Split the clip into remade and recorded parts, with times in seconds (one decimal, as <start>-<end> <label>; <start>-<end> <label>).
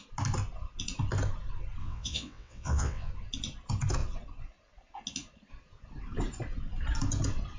0.0-1.8 recorded; 1.8-3.1 remade; 3.1-7.6 recorded